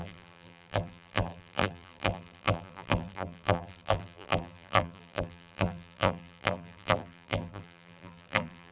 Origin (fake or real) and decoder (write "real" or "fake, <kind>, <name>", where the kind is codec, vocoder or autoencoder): fake, vocoder, BigVGAN v2